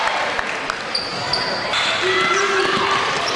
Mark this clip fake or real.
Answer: real